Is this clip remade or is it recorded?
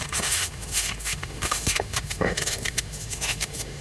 remade